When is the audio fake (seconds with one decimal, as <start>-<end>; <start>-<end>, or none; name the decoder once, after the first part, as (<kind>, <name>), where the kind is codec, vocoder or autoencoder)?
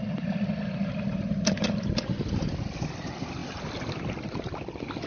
none